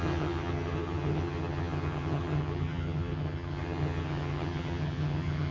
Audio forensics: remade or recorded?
remade